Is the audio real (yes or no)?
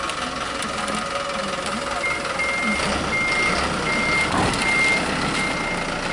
yes